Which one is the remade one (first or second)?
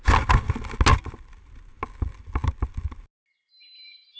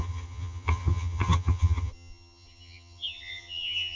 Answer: second